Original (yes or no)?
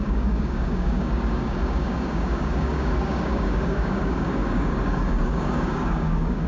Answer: no